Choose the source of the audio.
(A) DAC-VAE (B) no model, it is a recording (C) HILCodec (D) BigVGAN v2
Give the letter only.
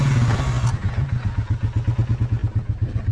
B